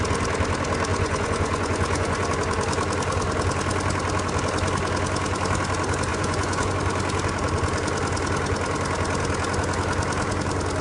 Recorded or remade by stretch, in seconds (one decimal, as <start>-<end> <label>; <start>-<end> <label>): 0.0-0.9 recorded; 0.9-2.3 remade; 2.3-6.1 recorded; 6.1-6.7 remade; 6.7-10.8 recorded